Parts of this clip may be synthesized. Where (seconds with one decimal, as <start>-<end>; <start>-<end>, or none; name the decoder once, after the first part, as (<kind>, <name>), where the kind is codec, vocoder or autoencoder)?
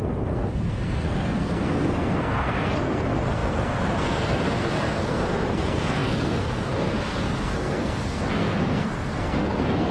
0.0-9.9 (codec, SNAC)